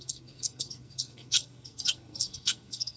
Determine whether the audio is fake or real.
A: fake